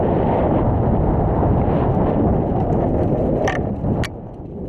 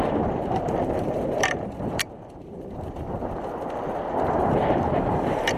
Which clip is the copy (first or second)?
second